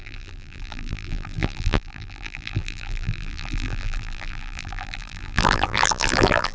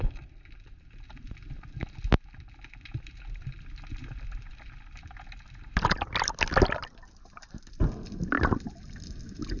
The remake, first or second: first